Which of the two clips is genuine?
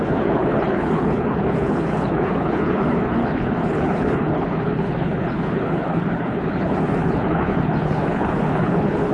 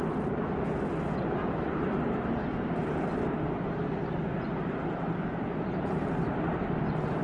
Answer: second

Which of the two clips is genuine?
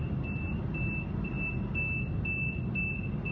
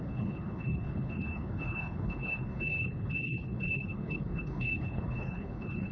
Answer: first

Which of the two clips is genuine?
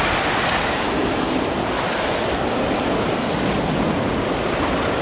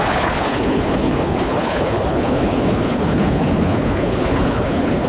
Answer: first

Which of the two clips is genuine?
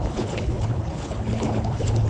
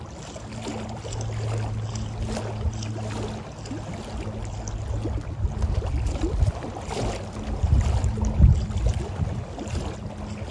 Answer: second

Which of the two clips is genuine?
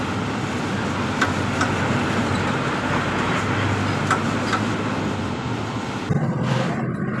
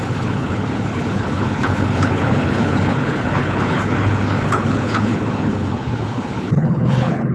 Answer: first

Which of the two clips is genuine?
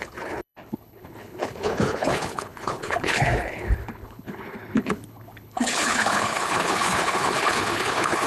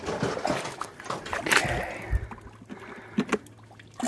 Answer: second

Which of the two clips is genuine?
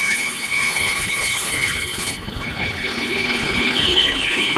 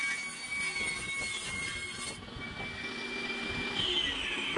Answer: second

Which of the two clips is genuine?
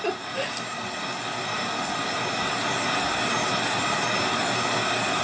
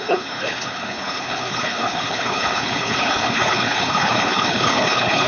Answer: first